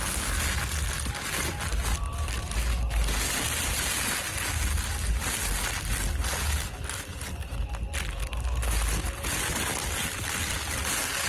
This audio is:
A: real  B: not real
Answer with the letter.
A